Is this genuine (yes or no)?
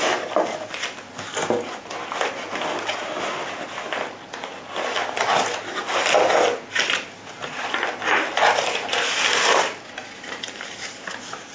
yes